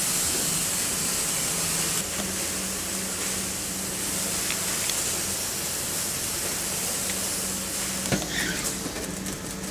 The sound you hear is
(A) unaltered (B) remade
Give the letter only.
A